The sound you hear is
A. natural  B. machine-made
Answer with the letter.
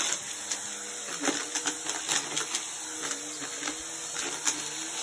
A